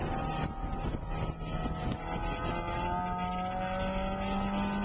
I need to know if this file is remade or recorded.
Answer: recorded